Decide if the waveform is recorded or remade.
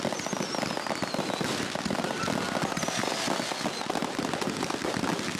recorded